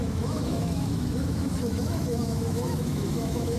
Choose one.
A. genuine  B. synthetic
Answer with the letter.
B